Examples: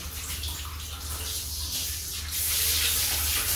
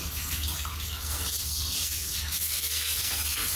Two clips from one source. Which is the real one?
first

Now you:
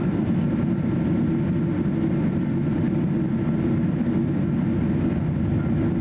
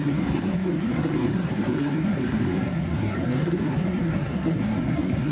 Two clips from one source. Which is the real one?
first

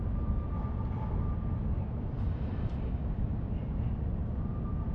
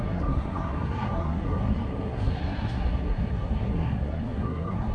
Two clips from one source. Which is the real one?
first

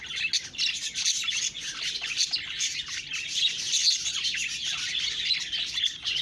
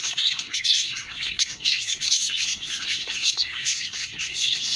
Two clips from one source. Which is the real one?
first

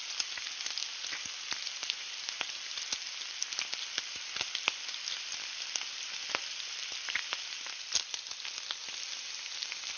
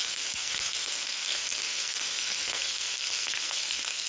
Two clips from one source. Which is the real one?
first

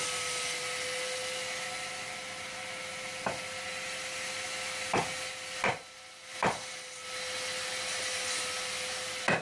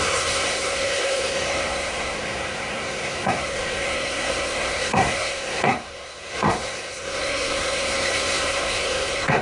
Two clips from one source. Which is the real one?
first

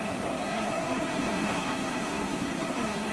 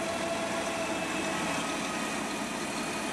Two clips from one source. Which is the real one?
second